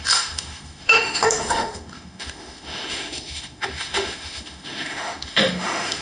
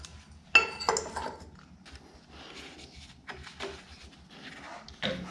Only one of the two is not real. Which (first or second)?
first